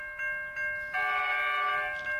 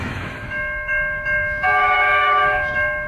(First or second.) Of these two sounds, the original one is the first